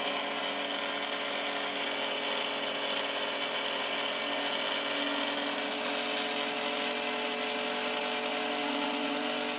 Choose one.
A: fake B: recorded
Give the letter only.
B